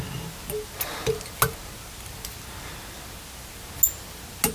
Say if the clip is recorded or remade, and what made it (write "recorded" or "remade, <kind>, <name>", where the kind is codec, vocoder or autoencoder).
recorded